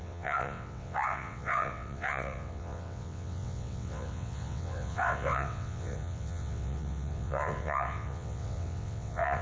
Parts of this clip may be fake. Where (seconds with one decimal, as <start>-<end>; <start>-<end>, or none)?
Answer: 0.0-9.4